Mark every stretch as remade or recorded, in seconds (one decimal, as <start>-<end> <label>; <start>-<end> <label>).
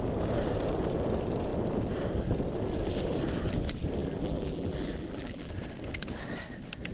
0.0-4.0 recorded; 4.0-5.5 remade; 5.5-6.9 recorded